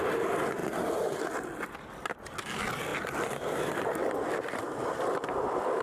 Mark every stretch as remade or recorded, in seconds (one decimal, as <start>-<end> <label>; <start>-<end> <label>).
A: 0.0-5.8 recorded